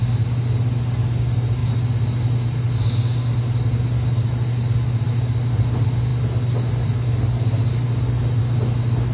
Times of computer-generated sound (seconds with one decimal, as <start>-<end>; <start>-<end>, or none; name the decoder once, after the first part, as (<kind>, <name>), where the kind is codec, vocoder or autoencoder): none

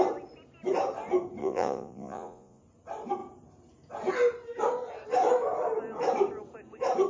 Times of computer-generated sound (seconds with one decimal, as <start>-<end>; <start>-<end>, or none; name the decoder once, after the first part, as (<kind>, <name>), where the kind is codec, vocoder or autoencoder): 1.4-2.6 (vocoder, Vocos)

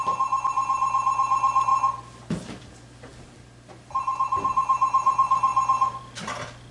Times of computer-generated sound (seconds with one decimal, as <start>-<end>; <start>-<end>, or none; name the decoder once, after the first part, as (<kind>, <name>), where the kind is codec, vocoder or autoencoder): none